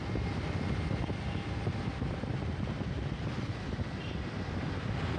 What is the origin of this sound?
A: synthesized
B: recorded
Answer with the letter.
B